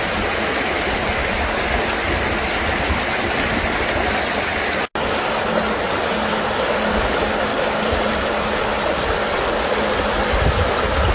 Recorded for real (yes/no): yes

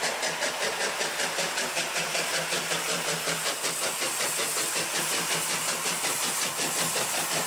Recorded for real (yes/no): yes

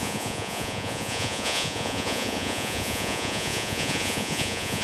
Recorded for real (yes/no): no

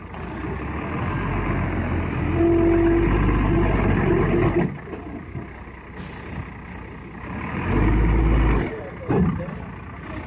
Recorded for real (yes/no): yes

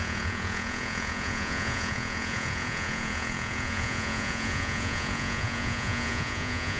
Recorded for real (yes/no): no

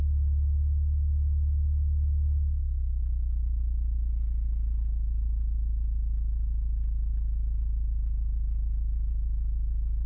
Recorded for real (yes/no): yes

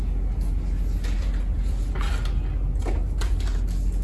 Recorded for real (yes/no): yes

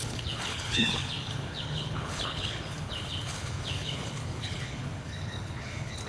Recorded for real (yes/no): no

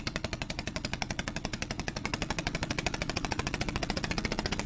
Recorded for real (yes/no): no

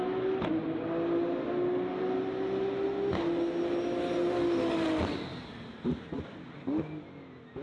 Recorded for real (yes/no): yes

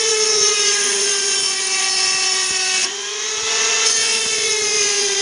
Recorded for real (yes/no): no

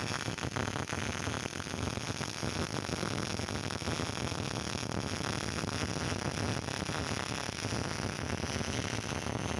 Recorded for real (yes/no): yes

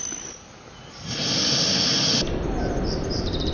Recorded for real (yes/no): yes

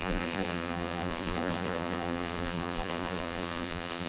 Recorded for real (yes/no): no